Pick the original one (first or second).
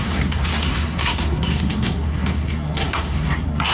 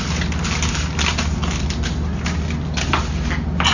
second